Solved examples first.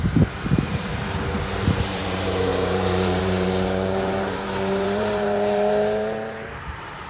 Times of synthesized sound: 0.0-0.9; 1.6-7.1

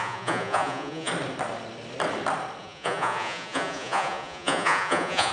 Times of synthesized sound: 0.0-1.1; 2.6-5.3

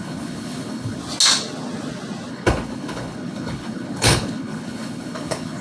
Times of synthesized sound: 0.0-1.0; 2.3-5.6

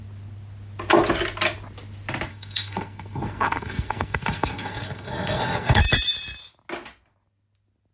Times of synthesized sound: 2.3-5.8

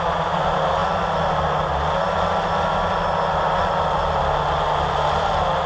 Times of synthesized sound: none

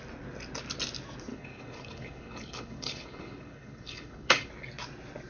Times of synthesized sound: 1.3-4.5